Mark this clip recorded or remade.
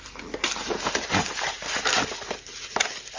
recorded